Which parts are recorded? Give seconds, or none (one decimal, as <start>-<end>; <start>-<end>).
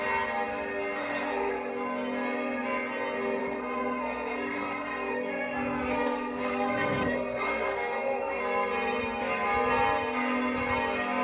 0.0-1.0; 1.7-3.4; 8.4-11.2